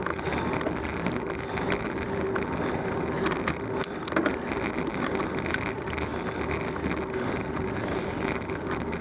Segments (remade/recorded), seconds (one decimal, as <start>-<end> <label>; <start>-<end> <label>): 0.0-9.0 recorded